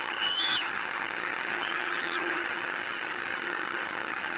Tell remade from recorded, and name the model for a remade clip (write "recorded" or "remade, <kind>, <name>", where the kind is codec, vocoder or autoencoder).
remade, vocoder, HiFi-GAN